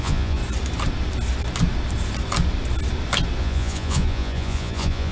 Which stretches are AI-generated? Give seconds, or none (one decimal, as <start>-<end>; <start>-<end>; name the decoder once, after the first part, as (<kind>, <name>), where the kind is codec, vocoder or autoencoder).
0.0-0.4 (vocoder, Vocos); 3.4-5.1

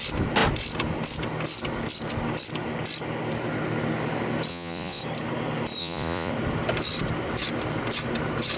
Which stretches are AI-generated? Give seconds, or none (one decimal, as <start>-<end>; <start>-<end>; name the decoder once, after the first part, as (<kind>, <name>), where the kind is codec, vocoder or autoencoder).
4.5-5.0 (vocoder, Vocos); 5.8-6.3